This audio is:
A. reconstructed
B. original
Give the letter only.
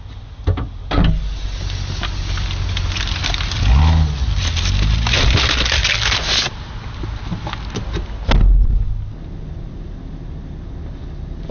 B